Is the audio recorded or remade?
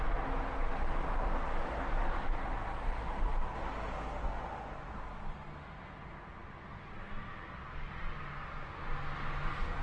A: recorded